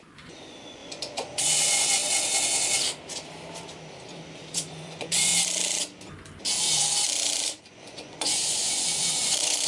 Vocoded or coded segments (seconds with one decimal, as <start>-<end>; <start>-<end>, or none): 0.0-2.0; 4.5-5.3; 7.7-9.7